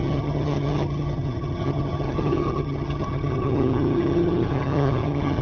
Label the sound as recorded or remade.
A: remade